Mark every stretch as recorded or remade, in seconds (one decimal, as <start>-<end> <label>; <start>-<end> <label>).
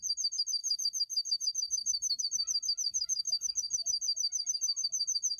0.0-0.6 recorded; 0.6-2.2 remade; 2.2-2.9 recorded; 2.9-3.5 remade; 3.5-5.4 recorded